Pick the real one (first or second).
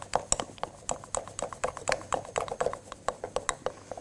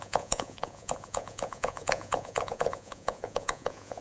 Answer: first